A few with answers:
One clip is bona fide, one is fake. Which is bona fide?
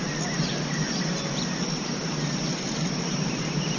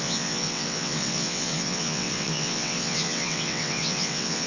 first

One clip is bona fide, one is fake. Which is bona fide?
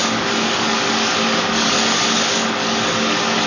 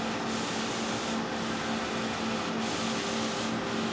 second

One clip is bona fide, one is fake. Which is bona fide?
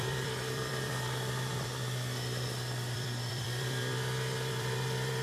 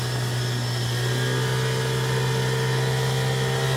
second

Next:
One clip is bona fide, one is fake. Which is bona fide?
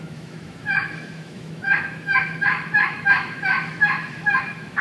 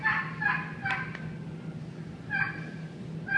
second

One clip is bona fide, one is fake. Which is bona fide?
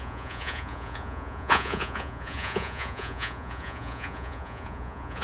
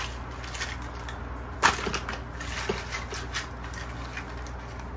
second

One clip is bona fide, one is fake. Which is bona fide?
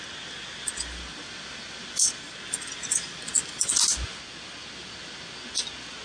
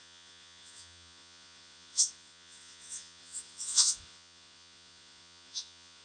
first